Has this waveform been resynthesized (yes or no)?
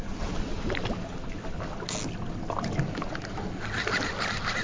no